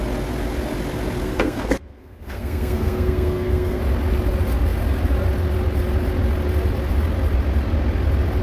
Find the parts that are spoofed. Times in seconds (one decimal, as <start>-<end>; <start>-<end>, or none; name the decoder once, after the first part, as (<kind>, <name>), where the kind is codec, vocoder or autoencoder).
1.2-3.8 (codec, SNAC)